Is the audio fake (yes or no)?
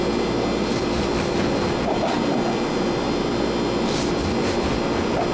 no